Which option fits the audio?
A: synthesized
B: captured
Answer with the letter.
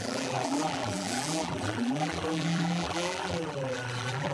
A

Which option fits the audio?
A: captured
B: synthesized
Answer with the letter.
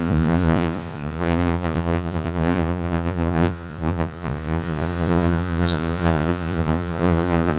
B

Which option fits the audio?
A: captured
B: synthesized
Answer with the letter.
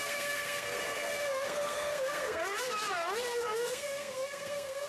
B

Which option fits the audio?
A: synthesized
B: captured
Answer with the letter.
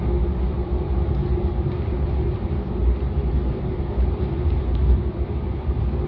B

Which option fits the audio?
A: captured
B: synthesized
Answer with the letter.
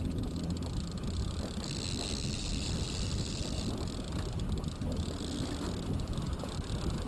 A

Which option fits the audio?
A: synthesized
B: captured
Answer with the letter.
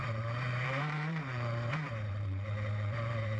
A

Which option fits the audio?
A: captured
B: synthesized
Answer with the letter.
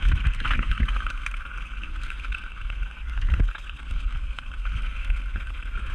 B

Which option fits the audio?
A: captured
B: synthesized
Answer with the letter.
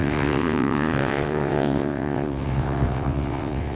B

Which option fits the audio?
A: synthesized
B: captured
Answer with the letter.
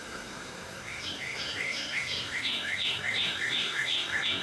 A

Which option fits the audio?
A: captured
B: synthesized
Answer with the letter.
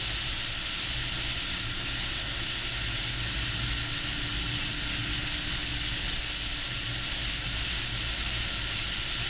A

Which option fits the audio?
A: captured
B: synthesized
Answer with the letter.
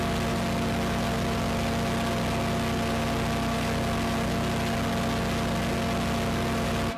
A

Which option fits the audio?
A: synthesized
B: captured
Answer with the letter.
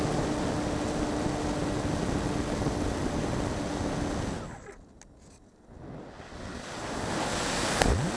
B